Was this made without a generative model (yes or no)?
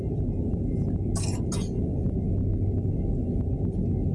yes